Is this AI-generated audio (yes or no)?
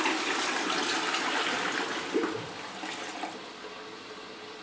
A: no